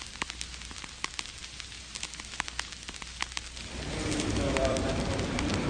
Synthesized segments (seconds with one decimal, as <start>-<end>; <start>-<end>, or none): 4.6-5.3

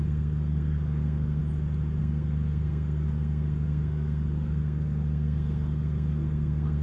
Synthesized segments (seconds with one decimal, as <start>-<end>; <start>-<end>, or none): 0.0-1.4; 2.0-6.8